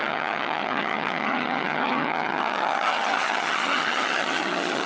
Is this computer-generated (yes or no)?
yes